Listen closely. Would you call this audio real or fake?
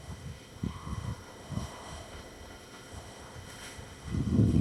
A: fake